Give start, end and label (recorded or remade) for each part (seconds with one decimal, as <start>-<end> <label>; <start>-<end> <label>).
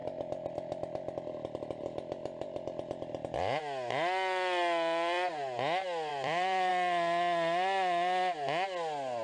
0.0-6.1 recorded; 6.1-6.7 remade; 6.7-9.2 recorded